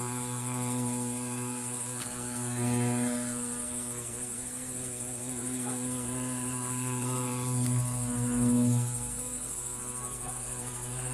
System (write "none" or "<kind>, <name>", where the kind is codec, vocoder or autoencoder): codec, SNAC